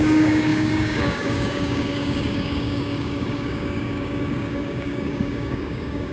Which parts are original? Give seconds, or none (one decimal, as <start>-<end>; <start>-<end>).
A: none